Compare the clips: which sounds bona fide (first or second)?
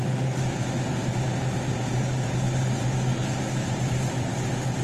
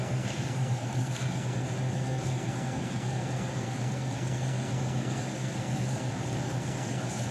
first